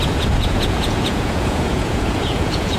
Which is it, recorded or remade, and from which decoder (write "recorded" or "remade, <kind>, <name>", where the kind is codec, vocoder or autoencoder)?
remade, vocoder, Vocos